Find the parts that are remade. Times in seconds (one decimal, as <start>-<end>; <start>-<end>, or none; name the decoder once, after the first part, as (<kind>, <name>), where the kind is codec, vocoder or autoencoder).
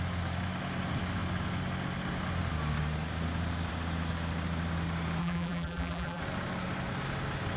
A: 5.2-6.2 (vocoder, BigVGAN v2)